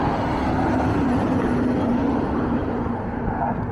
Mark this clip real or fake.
real